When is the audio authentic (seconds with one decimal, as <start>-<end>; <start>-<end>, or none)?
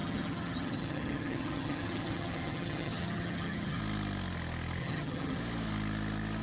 3.8-4.8; 5.4-6.4